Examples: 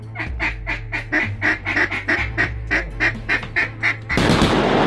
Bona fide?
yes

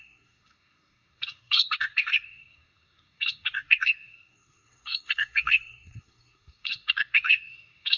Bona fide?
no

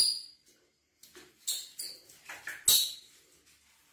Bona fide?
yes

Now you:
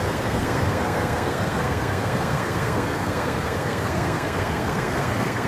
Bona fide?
no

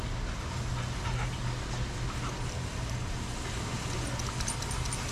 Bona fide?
yes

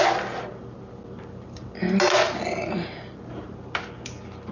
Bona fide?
yes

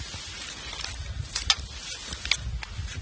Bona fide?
yes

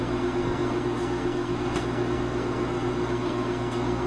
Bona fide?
no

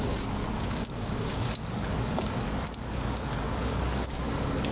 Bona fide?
no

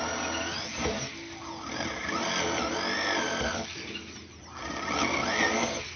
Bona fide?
yes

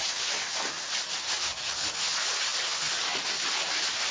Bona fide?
yes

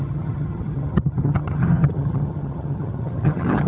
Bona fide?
no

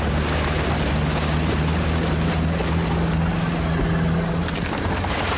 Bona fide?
yes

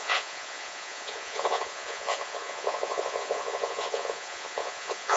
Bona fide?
no